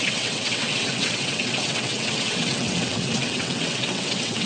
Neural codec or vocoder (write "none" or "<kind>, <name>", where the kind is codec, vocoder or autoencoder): vocoder, WaveNeXt